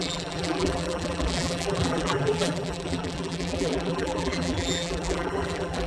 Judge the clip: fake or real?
fake